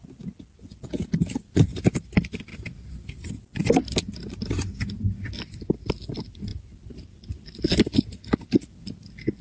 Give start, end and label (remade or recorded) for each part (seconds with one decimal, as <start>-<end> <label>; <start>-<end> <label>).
0.0-9.4 recorded